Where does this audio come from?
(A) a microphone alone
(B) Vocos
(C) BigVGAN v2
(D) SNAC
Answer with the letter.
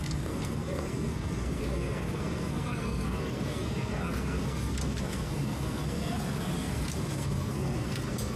D